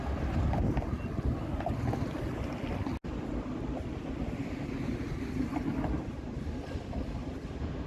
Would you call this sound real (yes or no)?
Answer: yes